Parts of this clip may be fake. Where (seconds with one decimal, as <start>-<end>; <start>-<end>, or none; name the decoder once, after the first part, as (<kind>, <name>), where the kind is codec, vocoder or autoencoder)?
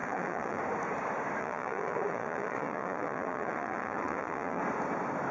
0.0-0.6 (vocoder, Vocos); 1.4-4.6